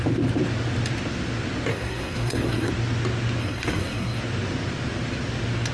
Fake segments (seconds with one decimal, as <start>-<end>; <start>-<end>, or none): 1.7-2.7; 3.4-4.2